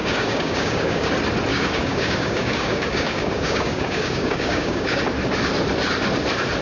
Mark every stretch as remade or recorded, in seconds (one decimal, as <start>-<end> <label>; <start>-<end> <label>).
0.0-1.1 remade; 1.1-1.5 recorded; 1.5-5.0 remade; 5.0-6.6 recorded